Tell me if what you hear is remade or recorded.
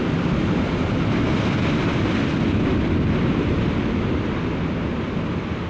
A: recorded